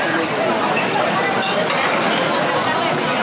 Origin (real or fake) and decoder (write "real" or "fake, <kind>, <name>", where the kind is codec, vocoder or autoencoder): real